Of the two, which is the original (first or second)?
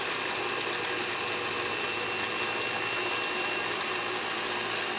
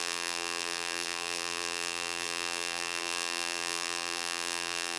first